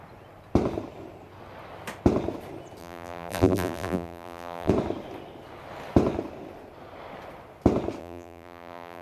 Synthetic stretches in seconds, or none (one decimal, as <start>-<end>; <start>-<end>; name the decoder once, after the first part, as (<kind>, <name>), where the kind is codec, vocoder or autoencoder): 2.8-4.7 (vocoder, BigVGAN v2); 8.0-9.0